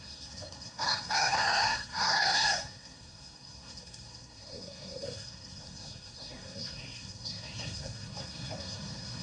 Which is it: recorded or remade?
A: remade